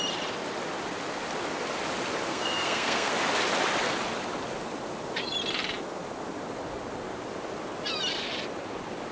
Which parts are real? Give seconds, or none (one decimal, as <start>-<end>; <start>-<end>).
0.0-2.3; 3.1-9.1